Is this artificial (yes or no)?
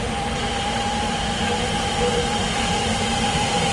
no